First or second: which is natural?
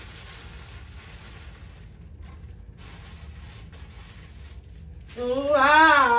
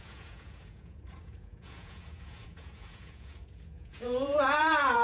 first